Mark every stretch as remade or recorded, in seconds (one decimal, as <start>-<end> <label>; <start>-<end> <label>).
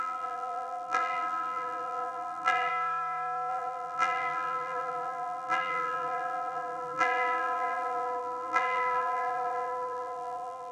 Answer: 0.0-2.7 remade; 2.7-3.5 recorded; 3.5-10.7 remade